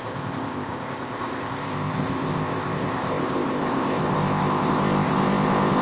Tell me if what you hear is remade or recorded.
remade